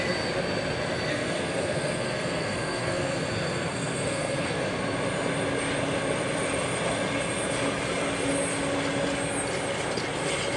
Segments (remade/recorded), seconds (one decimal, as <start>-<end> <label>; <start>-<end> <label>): 0.0-1.1 recorded; 1.1-4.6 remade; 4.6-10.6 recorded